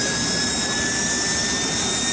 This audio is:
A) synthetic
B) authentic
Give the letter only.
B